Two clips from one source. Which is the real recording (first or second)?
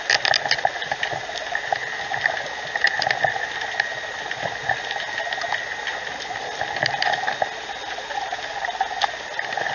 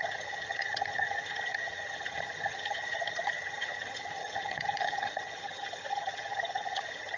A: first